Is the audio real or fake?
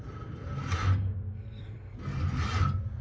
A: real